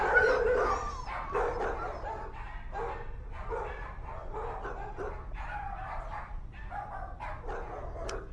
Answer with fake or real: real